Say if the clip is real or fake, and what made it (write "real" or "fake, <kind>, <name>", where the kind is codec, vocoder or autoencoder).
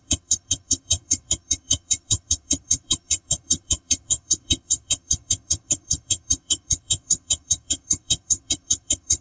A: fake, vocoder, HiFi-GAN